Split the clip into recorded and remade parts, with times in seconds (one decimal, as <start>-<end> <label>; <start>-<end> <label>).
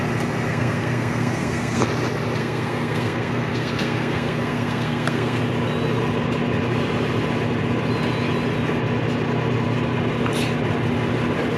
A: 0.0-0.5 recorded; 0.5-1.9 remade; 1.9-2.4 recorded; 2.4-5.4 remade; 5.4-11.6 recorded